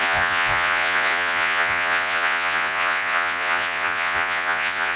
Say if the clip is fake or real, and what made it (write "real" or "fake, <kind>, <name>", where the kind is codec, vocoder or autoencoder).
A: fake, vocoder, Vocos